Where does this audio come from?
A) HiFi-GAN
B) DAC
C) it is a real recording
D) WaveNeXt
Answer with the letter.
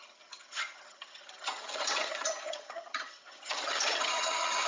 A